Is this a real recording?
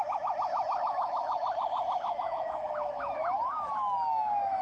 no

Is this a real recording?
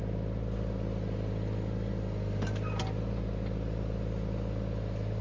yes